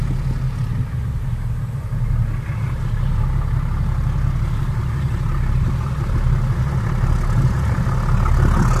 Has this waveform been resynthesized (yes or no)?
no